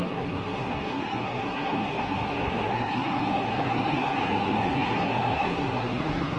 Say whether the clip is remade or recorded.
remade